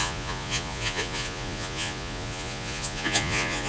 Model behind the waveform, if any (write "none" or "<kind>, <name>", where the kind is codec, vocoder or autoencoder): vocoder, Vocos